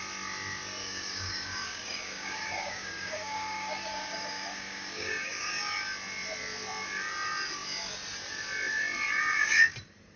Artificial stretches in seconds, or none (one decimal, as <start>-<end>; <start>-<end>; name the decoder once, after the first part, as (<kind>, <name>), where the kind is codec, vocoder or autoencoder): 0.8-5.5 (codec, DAC)